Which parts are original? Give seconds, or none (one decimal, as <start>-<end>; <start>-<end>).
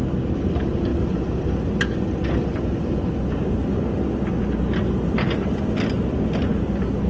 0.0-7.1